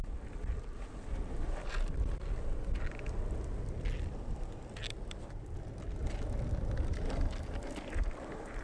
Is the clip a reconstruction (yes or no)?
no